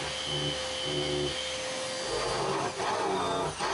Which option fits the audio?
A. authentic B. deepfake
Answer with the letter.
A